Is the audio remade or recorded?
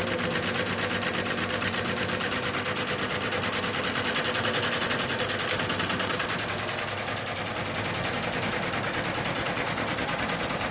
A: recorded